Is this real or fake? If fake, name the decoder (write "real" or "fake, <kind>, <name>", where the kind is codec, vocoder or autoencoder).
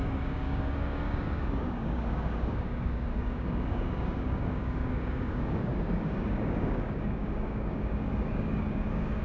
fake, codec, DAC